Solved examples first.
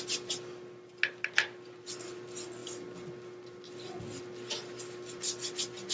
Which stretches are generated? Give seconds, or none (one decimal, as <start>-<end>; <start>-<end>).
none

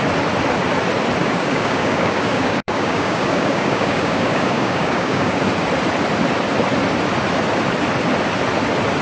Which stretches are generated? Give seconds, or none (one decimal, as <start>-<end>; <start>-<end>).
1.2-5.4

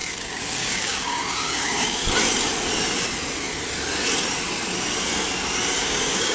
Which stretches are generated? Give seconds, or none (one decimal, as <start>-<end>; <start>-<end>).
0.0-2.0; 5.8-6.3